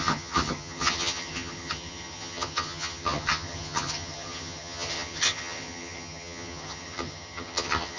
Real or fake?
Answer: fake